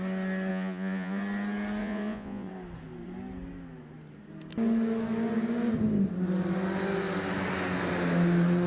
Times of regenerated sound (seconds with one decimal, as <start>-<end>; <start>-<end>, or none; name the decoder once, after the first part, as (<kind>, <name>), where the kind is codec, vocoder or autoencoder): 0.5-1.2 (vocoder, Vocos); 1.8-2.5